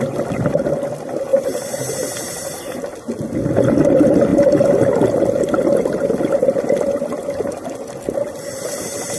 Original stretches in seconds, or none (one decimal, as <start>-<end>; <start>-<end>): 0.0-1.3; 2.6-9.2

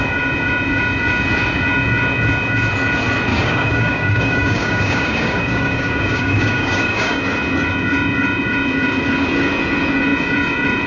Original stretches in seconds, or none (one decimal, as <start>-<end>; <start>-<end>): 0.0-3.3; 7.2-10.9